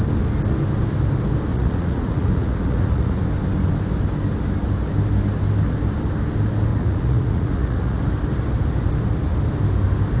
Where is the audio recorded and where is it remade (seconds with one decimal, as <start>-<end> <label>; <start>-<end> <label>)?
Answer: 0.0-1.5 recorded; 1.5-3.2 remade; 3.2-6.7 recorded; 6.7-8.0 remade; 8.0-10.2 recorded